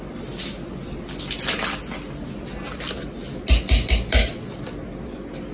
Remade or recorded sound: recorded